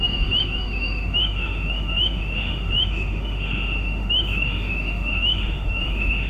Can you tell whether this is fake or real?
fake